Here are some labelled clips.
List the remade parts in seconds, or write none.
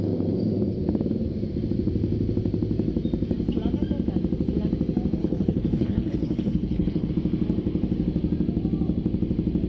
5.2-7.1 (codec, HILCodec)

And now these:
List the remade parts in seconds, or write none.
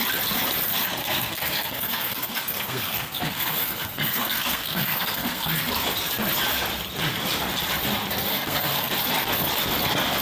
0.7-5.7 (codec, SNAC); 8.3-8.9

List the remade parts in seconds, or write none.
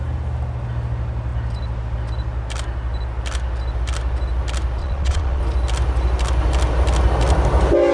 4.8-5.4 (vocoder, Vocos)